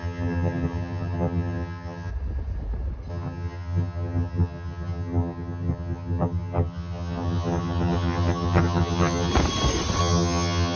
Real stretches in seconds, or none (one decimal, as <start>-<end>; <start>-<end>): 2.1-3.1; 9.3-10.0